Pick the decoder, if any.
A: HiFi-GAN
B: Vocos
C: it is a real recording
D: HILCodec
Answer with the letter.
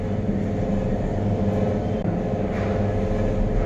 C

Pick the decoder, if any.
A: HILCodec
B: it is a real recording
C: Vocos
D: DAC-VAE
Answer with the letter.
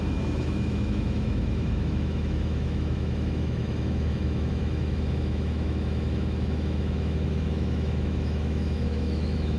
D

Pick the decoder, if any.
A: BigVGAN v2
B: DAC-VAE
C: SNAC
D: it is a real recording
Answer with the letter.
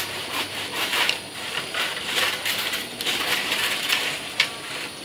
A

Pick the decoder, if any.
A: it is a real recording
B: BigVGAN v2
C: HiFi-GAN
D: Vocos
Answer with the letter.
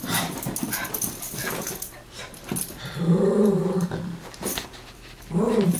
B